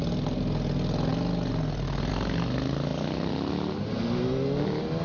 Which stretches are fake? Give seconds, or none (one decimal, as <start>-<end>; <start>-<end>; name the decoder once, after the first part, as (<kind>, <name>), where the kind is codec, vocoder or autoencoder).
none